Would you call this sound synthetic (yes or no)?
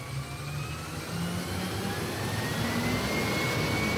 no